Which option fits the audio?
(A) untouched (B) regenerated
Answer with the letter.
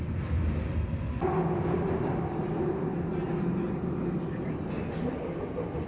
A